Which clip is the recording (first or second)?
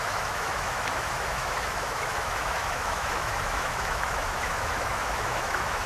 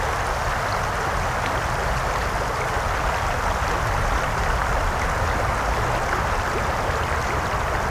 second